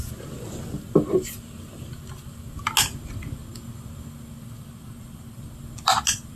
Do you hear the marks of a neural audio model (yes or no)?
no